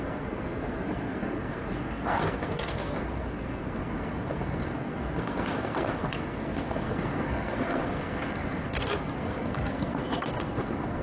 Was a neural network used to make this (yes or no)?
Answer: yes